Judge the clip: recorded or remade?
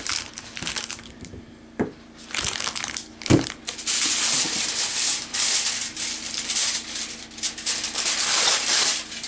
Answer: recorded